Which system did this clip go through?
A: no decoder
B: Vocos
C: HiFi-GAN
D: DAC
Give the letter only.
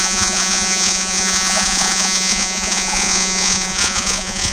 B